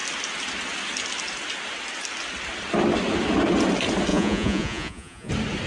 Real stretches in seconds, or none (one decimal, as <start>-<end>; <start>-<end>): 0.0-4.1; 5.3-5.7